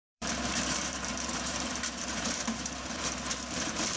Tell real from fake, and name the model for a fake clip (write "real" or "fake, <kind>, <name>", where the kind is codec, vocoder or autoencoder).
fake, vocoder, BigVGAN v2